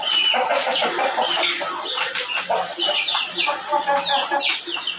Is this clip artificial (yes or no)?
no